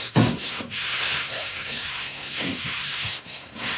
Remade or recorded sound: remade